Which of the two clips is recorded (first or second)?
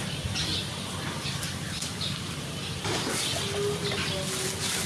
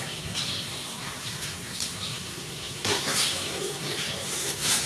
first